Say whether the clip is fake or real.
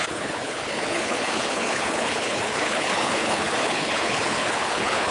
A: fake